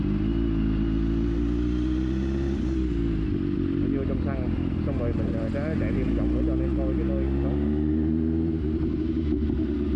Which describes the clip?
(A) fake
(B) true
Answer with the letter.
B